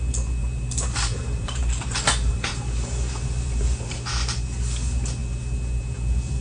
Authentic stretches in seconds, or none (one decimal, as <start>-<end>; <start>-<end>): 0.0-0.4; 4.1-6.4